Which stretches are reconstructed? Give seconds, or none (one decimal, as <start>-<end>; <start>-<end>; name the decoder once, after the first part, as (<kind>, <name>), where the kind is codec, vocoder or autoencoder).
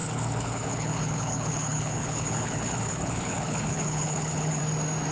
0.0-4.6 (codec, HILCodec)